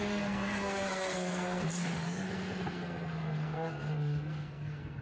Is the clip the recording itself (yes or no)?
no